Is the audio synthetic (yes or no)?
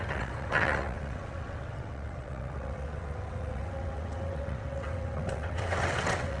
yes